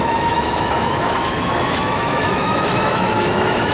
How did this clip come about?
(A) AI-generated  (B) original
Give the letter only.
A